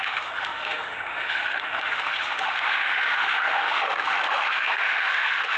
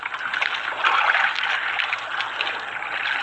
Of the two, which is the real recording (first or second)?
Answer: second